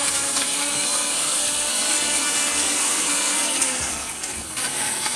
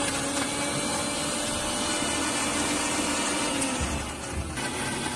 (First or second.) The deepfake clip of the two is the first